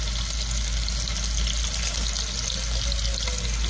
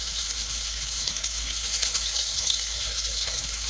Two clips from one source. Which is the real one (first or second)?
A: first